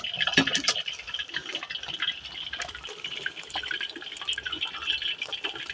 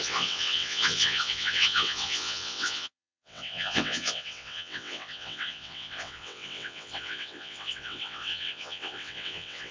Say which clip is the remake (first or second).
second